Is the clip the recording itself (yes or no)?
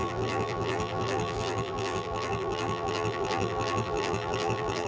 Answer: no